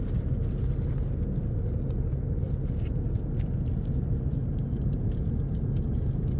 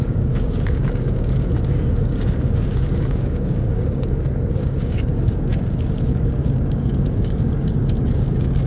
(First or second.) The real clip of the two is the first